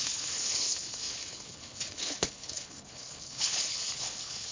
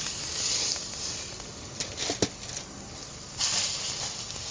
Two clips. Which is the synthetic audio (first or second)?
first